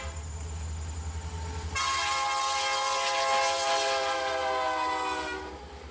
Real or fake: real